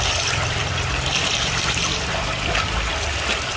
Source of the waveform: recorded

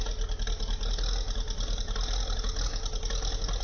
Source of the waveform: recorded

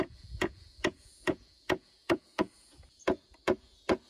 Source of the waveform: remade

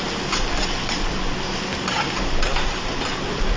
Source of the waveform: recorded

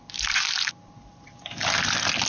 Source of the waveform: recorded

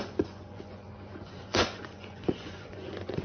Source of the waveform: remade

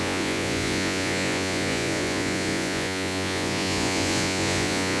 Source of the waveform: remade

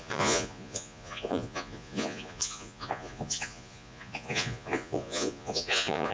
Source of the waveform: remade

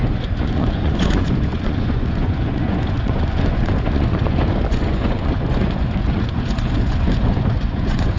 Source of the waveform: remade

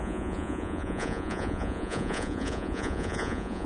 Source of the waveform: remade